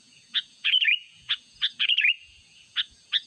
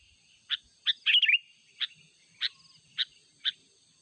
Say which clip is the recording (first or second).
second